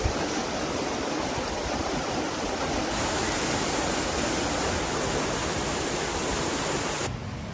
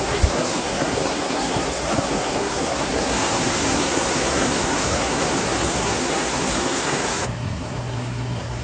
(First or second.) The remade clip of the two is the second